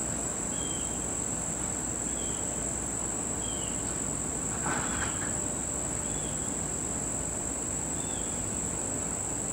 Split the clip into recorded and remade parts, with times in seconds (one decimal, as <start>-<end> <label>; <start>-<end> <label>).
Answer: 0.0-1.2 remade; 1.2-7.4 recorded; 7.4-8.6 remade; 8.6-9.5 recorded